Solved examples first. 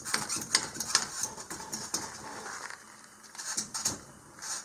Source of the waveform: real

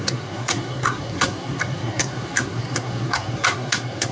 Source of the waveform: fake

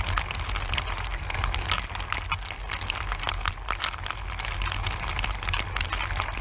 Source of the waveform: real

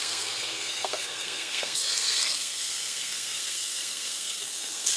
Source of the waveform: fake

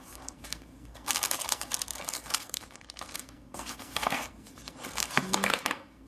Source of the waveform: fake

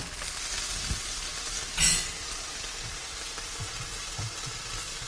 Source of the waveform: real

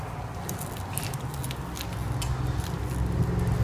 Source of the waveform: real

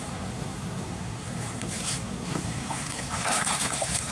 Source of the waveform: fake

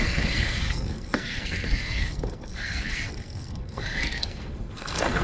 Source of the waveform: fake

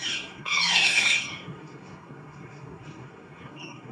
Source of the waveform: fake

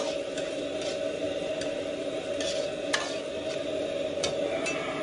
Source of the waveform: real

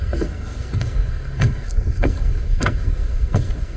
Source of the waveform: fake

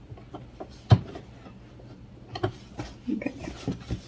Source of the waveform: real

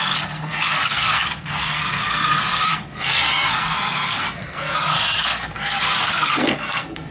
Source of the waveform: fake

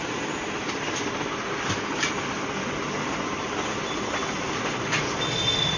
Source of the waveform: real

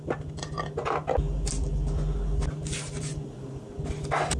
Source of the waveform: real